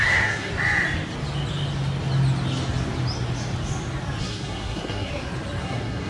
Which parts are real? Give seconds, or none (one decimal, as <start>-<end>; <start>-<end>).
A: 0.5-4.2; 5.1-5.6